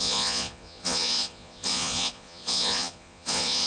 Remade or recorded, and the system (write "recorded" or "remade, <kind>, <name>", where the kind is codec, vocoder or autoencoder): remade, vocoder, Vocos